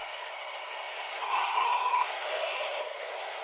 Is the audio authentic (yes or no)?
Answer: no